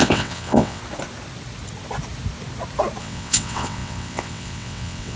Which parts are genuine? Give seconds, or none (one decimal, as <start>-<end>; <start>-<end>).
0.8-3.0